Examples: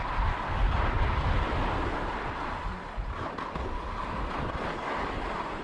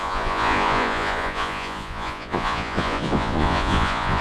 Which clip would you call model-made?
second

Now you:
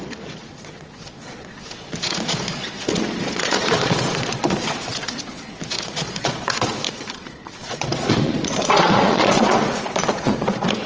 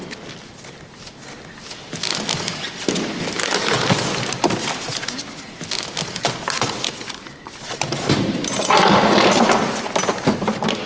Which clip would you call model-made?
first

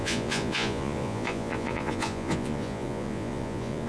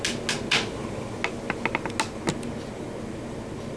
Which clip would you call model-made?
first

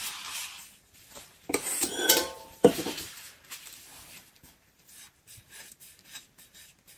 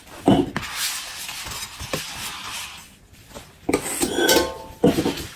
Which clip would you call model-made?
first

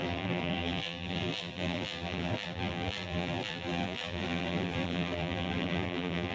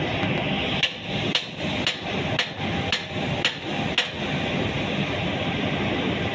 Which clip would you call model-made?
first